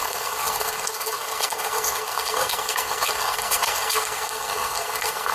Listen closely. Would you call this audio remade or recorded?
remade